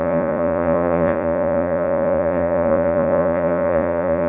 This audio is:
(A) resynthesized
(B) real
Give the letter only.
A